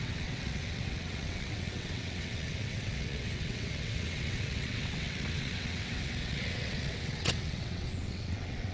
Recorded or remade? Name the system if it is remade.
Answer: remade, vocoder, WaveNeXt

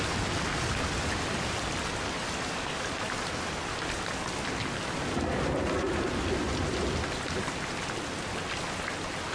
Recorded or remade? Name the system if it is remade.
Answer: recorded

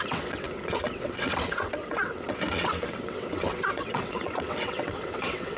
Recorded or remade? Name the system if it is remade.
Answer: remade, vocoder, WaveNeXt